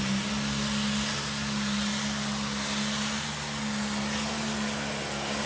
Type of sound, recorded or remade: recorded